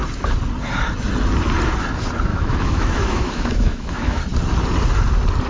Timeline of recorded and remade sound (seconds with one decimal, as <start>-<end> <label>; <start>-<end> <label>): 0.0-2.3 recorded; 2.3-4.2 remade; 4.2-5.5 recorded